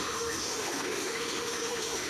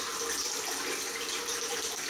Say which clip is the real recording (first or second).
second